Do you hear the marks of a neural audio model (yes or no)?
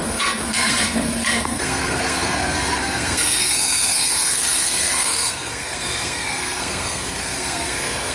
yes